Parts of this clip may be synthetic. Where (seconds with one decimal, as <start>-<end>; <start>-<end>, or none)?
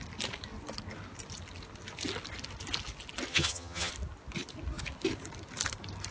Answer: 3.3-3.9